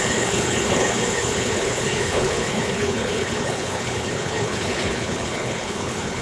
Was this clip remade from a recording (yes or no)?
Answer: yes